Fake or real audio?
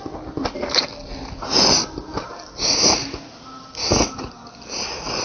real